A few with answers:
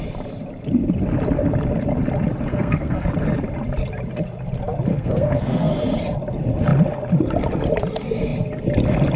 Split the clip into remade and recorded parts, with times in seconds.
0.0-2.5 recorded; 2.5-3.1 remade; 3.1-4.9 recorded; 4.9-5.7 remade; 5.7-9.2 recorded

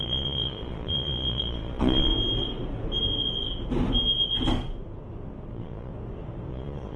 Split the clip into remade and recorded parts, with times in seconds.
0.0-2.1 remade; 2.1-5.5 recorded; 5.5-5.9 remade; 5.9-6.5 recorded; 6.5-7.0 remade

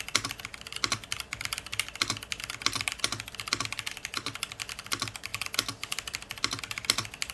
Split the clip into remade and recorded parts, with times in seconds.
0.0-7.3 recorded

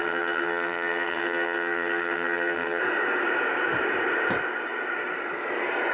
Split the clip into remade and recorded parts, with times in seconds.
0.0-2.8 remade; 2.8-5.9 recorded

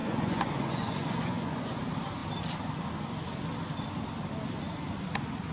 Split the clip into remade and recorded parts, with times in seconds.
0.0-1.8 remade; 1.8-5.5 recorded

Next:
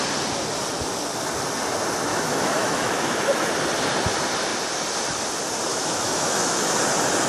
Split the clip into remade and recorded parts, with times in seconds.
0.0-2.1 recorded; 2.1-3.5 remade; 3.5-5.7 recorded; 5.7-6.7 remade; 6.7-7.3 recorded

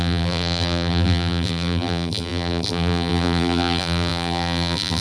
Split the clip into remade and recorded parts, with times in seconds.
0.0-5.0 remade